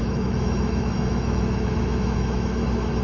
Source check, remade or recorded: remade